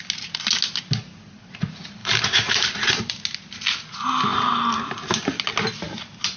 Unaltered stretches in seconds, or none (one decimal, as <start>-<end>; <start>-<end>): 0.0-2.0; 3.1-6.4